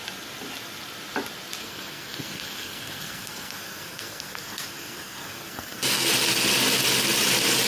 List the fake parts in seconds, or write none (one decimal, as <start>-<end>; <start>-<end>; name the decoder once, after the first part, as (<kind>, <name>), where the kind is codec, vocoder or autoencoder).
1.6-6.1 (codec, SNAC)